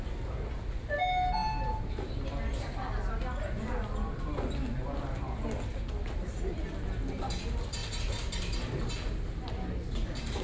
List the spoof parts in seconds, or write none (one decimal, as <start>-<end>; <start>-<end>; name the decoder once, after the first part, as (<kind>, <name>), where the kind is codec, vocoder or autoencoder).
none